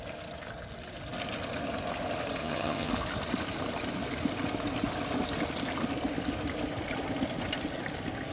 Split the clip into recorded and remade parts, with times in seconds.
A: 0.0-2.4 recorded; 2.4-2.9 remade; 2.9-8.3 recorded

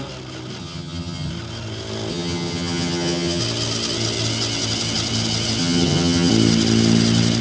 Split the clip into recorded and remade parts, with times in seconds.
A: 0.0-0.6 recorded; 0.6-1.3 remade; 1.3-2.1 recorded; 2.1-3.4 remade; 3.4-5.6 recorded; 5.6-6.3 remade; 6.3-7.4 recorded

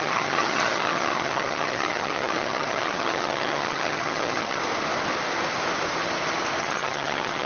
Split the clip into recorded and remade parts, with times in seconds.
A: 0.0-4.6 remade; 4.6-6.6 recorded; 6.6-7.5 remade

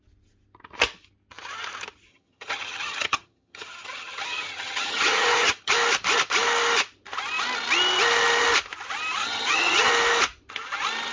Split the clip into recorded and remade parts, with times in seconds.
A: 0.0-2.1 recorded; 2.1-5.7 remade; 5.7-9.2 recorded; 9.2-9.9 remade; 9.9-11.1 recorded

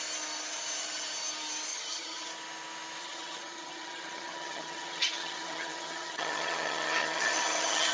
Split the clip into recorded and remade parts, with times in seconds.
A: 0.0-1.7 recorded; 1.7-2.3 remade; 2.3-3.0 recorded; 3.0-7.9 remade

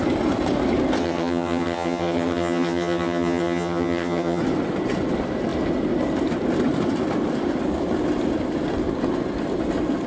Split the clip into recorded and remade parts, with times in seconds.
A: 0.0-1.0 recorded; 1.0-4.4 remade; 4.4-10.1 recorded